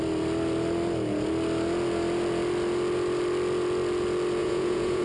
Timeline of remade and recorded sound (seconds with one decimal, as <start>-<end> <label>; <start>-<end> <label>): 0.0-4.4 recorded; 4.4-5.0 remade